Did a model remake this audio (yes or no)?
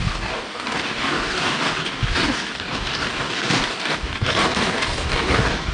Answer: yes